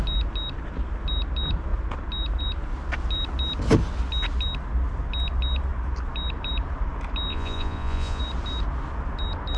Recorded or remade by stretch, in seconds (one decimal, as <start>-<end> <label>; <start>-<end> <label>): 0.0-7.3 recorded; 7.3-8.2 remade; 8.2-9.6 recorded